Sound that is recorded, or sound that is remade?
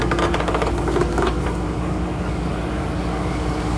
remade